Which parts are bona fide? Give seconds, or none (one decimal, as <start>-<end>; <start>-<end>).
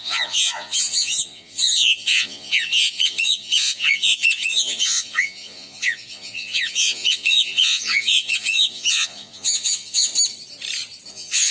10.1-11.1